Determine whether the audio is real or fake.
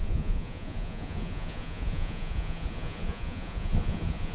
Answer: fake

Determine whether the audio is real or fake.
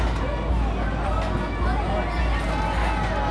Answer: real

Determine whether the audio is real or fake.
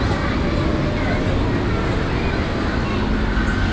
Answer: real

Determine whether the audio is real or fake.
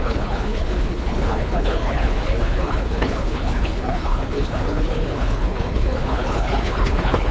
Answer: fake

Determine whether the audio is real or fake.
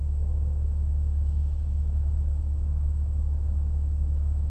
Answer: fake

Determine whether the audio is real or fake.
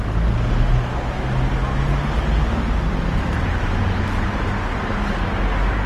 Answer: real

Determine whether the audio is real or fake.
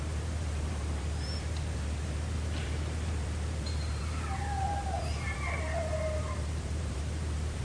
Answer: fake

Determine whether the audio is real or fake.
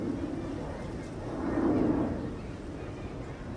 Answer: real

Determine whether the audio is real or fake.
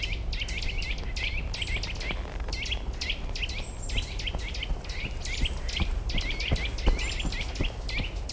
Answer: real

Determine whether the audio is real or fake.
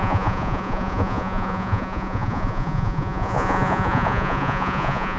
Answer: fake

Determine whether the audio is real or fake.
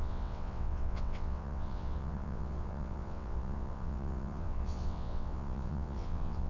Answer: fake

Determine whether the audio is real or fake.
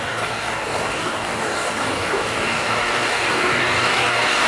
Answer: fake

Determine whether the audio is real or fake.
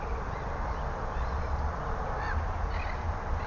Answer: real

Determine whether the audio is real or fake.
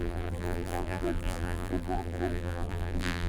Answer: fake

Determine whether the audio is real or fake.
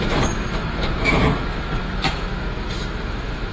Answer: fake